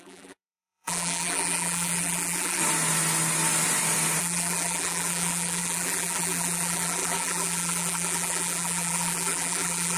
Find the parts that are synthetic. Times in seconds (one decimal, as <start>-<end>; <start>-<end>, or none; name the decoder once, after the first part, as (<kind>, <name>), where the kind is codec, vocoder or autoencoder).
0.0-2.6 (vocoder, BigVGAN v2); 4.2-10.0